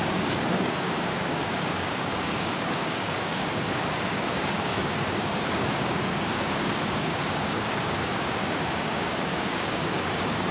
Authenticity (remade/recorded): remade